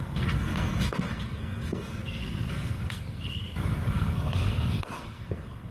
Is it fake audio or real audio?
fake